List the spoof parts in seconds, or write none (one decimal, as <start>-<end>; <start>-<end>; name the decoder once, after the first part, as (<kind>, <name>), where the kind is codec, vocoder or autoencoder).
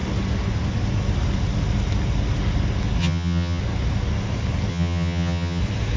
3.0-3.6 (vocoder, HiFi-GAN); 4.7-5.6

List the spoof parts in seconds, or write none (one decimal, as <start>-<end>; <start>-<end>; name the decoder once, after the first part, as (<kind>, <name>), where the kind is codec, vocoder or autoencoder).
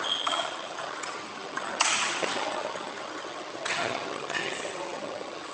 0.0-5.5 (vocoder, HiFi-GAN)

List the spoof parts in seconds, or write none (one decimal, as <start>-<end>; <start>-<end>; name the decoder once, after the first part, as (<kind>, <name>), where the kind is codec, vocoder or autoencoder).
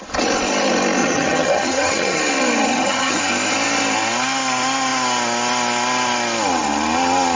1.0-2.2 (vocoder, HiFi-GAN); 2.7-3.2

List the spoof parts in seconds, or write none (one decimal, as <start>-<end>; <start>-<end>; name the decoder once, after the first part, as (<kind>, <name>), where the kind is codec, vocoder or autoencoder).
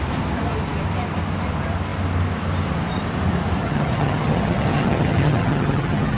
3.6-6.2 (vocoder, HiFi-GAN)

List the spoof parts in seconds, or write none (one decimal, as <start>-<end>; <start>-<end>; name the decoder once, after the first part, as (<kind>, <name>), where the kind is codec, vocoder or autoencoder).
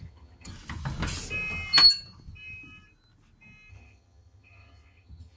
0.0-0.5 (vocoder, HiFi-GAN); 3.7-5.4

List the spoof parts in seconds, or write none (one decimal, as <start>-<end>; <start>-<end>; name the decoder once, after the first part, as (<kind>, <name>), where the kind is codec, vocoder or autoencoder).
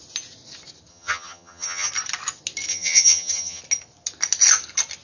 0.9-1.9 (vocoder, HiFi-GAN); 2.7-3.6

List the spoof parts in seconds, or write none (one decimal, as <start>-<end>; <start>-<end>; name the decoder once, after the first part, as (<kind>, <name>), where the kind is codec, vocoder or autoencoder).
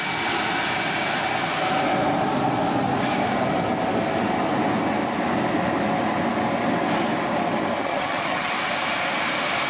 7.8-8.5 (vocoder, HiFi-GAN)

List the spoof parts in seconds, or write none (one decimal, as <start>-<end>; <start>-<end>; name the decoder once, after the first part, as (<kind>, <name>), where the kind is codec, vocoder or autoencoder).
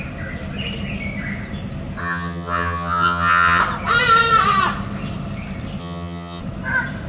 2.0-3.6 (vocoder, HiFi-GAN); 5.8-6.4